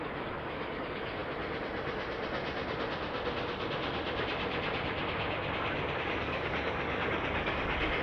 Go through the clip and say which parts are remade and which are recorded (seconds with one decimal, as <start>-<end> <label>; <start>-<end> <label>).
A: 0.0-1.2 remade; 1.2-6.0 recorded; 6.0-8.0 remade